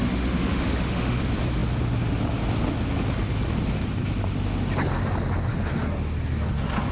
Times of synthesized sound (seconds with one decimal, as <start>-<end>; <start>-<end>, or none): 0.0-1.2